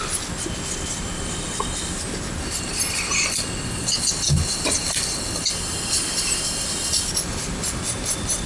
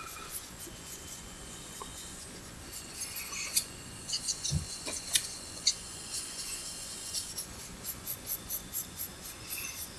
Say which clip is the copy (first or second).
second